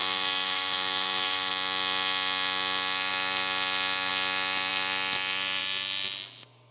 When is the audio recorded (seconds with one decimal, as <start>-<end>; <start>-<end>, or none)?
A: 1.5-6.7